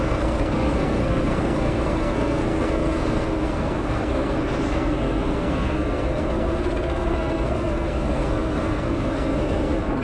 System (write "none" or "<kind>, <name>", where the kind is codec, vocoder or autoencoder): codec, SNAC